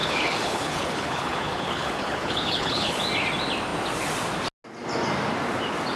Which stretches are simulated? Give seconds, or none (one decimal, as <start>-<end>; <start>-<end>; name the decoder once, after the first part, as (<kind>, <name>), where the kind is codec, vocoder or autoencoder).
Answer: 0.0-3.0 (codec, HILCodec)